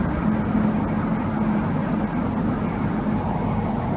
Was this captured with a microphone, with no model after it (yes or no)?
yes